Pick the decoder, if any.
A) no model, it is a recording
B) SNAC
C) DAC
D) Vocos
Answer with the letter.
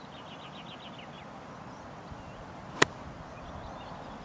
A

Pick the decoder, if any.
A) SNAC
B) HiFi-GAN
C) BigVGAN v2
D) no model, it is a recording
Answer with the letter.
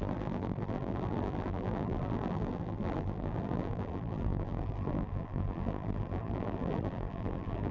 C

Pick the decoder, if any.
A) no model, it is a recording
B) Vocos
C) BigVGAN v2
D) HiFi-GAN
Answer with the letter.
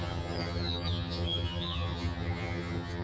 D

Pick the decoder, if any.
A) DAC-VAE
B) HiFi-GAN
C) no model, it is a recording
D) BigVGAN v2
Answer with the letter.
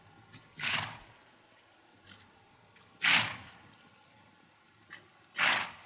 C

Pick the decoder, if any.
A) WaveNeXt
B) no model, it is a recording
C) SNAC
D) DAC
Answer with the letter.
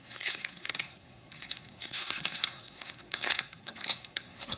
C